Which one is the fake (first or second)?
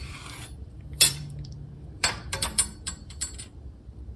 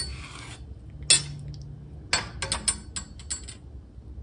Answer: first